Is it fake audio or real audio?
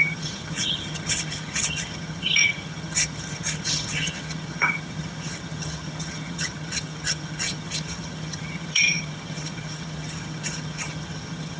fake